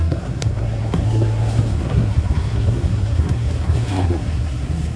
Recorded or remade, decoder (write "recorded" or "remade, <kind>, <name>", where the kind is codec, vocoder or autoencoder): remade, codec, SNAC